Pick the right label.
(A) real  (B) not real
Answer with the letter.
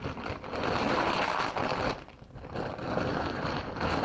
B